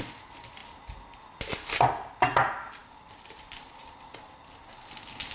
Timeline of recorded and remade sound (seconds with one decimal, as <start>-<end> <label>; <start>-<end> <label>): 0.0-5.3 recorded